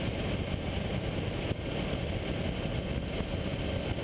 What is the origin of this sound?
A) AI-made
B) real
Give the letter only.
B